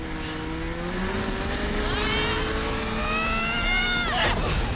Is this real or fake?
real